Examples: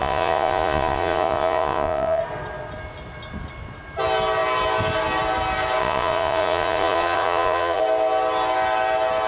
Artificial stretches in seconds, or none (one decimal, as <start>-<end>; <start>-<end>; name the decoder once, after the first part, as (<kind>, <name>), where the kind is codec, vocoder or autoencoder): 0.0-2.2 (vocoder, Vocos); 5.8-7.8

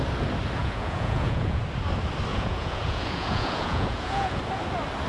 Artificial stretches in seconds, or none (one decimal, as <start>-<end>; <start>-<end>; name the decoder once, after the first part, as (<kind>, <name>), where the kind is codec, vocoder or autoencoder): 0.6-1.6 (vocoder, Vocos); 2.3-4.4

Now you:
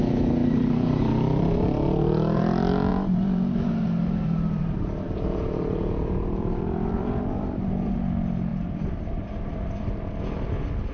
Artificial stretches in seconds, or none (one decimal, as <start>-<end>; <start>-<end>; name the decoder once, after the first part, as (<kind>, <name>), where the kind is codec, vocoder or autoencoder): 0.4-1.0 (vocoder, BigVGAN v2); 2.9-7.9; 8.5-10.0

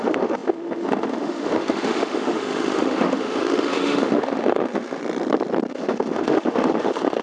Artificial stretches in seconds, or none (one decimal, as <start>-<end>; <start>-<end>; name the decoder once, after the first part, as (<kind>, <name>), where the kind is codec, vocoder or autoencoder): 0.0-5.0 (autoencoder, DAC-VAE); 5.7-7.2

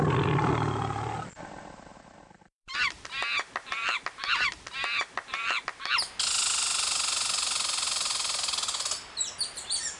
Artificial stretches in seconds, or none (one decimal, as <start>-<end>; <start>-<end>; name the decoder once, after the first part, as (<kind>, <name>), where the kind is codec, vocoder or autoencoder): none